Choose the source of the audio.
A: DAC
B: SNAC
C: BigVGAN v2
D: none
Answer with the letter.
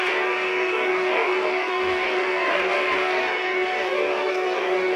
A